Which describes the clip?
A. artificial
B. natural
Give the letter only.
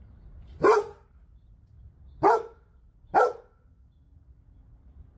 B